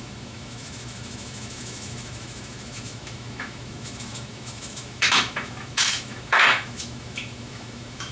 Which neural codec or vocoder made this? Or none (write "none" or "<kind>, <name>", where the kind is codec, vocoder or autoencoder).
autoencoder, DAC-VAE